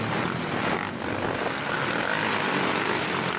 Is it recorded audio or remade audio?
remade